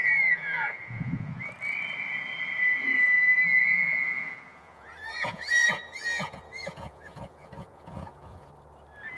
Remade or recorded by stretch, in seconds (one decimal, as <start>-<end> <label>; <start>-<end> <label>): 0.0-1.4 remade; 1.4-3.6 recorded; 3.6-8.5 remade; 8.5-9.2 recorded